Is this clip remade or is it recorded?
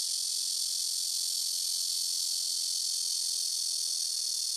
recorded